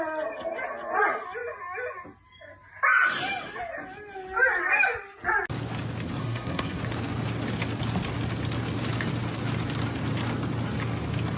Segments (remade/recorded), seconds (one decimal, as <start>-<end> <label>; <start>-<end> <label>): 0.0-6.2 recorded; 6.2-6.8 remade; 6.8-11.4 recorded